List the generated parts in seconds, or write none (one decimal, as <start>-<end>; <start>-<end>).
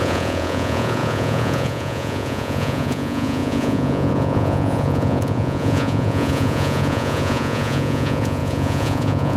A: 0.0-9.4